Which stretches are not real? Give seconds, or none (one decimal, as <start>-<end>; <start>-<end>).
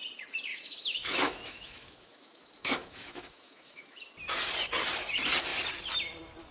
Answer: 0.5-4.0